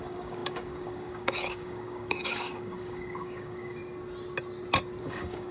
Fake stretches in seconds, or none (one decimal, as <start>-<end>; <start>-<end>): 0.0-3.8; 5.0-5.5